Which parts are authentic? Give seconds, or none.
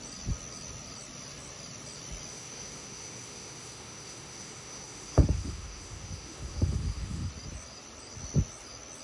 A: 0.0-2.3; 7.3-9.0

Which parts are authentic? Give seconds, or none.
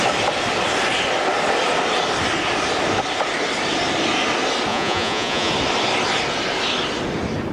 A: 0.0-4.7; 5.5-7.5